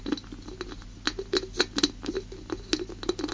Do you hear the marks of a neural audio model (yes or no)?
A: no